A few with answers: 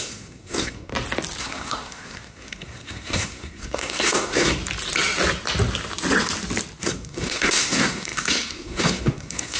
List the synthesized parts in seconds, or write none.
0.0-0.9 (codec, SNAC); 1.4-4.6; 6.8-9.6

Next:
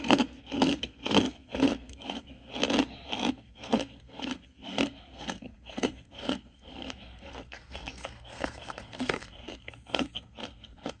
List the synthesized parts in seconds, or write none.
0.0-2.5 (codec, SNAC); 3.3-11.0